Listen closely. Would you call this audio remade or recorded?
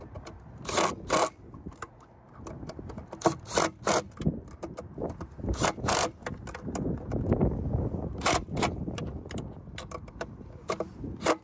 recorded